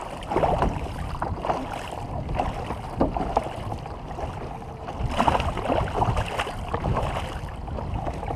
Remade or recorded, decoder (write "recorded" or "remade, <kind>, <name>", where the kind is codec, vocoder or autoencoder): recorded